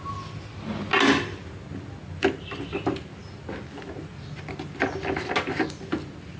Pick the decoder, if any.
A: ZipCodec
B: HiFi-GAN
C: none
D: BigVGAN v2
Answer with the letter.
C